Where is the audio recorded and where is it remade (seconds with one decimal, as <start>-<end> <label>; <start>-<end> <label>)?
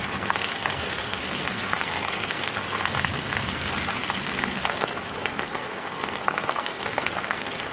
0.0-7.7 remade